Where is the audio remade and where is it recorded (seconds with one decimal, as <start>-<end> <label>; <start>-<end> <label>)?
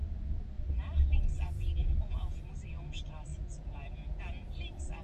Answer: 0.0-1.8 recorded; 1.8-2.4 remade; 2.4-3.3 recorded; 3.3-4.2 remade; 4.2-5.0 recorded